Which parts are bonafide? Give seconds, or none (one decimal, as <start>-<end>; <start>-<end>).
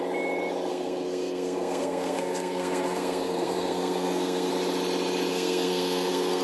0.0-0.7; 4.5-5.3